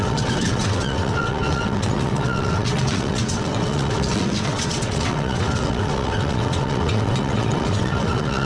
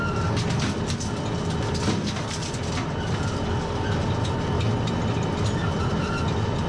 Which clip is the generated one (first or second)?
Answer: first